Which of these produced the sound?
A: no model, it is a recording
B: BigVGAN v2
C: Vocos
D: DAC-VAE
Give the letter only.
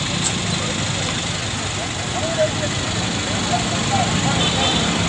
A